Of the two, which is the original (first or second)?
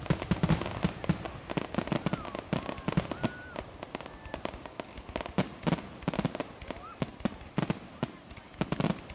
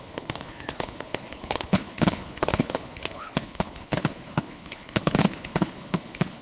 first